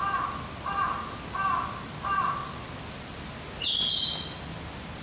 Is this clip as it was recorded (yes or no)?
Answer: yes